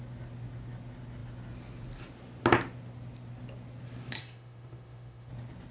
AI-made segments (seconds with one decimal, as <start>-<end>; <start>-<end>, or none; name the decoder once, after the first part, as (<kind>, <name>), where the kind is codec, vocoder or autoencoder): 4.2-5.3 (autoencoder, DAC-VAE)

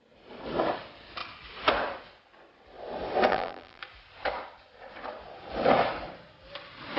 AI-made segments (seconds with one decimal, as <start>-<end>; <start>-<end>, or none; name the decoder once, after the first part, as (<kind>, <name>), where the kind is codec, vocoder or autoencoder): 3.3-3.8 (vocoder, BigVGAN v2)

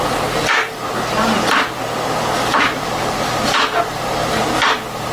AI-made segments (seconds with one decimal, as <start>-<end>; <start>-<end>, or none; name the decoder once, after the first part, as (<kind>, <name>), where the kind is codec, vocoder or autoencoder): 0.0-0.9 (vocoder, BigVGAN v2); 2.5-4.4

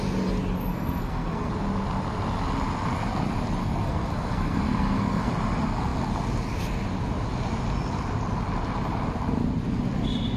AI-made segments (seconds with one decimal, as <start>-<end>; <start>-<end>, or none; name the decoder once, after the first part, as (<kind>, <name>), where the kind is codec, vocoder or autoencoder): 0.7-1.5 (codec, SNAC); 3.6-5.3